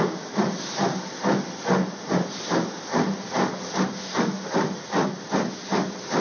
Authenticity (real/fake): real